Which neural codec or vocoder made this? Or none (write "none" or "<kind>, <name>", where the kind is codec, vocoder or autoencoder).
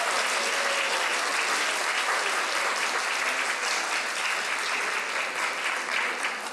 none